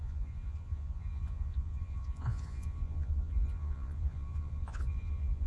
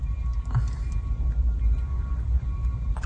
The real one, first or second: second